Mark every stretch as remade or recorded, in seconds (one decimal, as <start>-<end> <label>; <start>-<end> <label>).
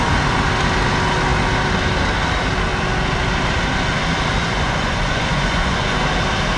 0.0-4.4 recorded; 4.4-6.0 remade; 6.0-6.6 recorded